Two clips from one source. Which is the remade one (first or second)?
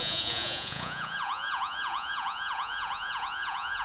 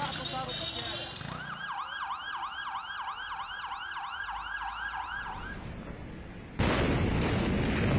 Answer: first